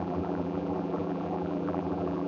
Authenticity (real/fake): fake